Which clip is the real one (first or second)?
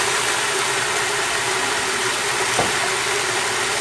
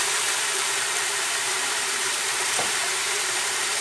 first